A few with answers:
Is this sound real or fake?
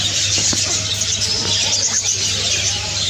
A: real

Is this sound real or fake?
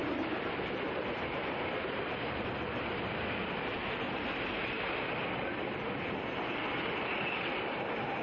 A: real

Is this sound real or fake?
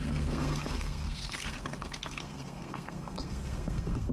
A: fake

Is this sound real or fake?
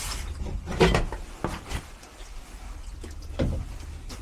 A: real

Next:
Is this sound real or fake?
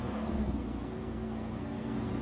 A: fake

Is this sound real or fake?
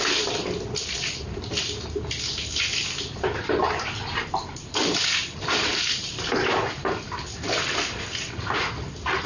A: real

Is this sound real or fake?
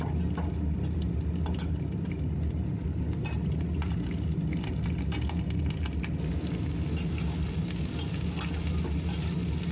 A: real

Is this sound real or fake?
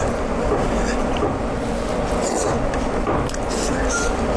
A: real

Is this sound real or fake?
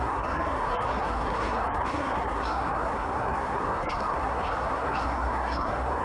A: fake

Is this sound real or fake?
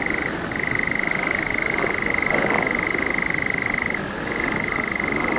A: real